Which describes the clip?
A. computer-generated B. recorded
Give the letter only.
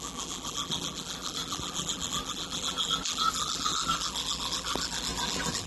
A